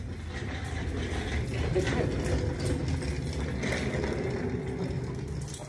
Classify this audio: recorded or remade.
recorded